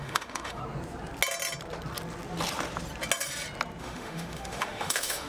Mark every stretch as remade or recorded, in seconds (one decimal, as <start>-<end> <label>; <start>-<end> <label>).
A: 0.0-0.6 remade; 0.6-3.8 recorded; 3.8-5.3 remade

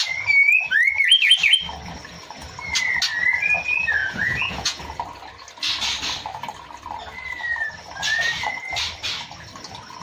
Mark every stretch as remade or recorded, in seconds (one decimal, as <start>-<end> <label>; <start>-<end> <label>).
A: 0.0-4.0 recorded; 4.0-4.8 remade; 4.8-10.0 recorded

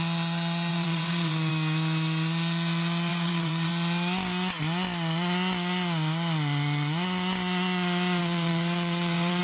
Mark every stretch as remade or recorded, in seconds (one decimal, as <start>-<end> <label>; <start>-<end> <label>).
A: 0.0-0.7 recorded; 0.7-1.5 remade; 1.5-3.1 recorded; 3.1-3.7 remade; 3.7-8.2 recorded; 8.2-9.4 remade

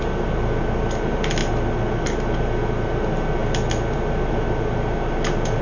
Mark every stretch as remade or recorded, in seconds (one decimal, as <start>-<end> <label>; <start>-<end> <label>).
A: 0.0-5.6 recorded